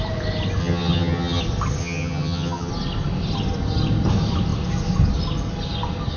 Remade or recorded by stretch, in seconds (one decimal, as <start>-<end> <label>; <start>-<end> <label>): 0.0-0.6 recorded; 0.6-1.4 remade; 1.4-1.8 recorded; 1.8-2.7 remade; 2.7-6.2 recorded